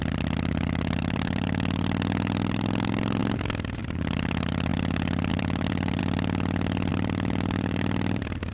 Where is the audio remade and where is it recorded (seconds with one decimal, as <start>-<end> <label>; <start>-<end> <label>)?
0.0-3.2 remade; 3.2-3.8 recorded; 3.8-4.7 remade; 4.7-5.3 recorded; 5.3-6.0 remade; 6.0-6.9 recorded; 6.9-8.5 remade